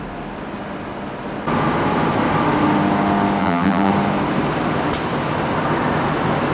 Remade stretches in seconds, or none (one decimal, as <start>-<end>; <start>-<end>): 3.4-3.9